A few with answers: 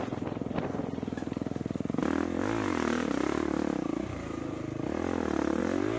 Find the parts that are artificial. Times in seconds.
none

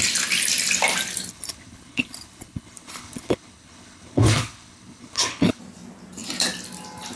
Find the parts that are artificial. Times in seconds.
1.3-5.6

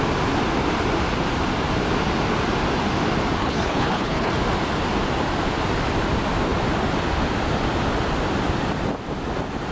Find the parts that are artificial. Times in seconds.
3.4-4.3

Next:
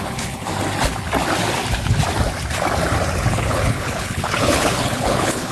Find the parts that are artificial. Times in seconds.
0.0-0.5; 3.3-5.5

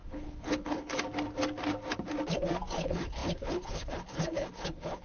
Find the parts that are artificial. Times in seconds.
0.0-0.9; 2.8-5.0